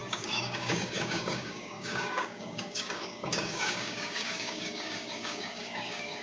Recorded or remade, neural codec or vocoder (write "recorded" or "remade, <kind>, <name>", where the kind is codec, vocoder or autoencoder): remade, codec, DAC